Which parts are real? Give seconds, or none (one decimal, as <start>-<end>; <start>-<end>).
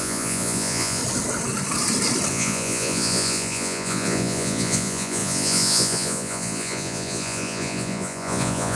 1.0-2.3